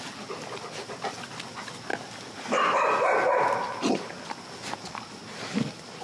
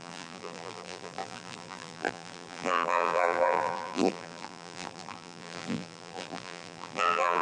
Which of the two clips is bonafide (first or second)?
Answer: first